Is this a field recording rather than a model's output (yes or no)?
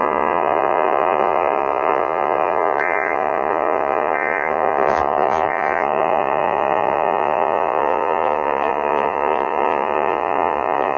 no